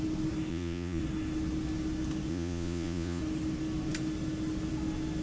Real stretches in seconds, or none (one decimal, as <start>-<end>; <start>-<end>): 0.0-0.5; 1.0-2.3; 3.2-5.2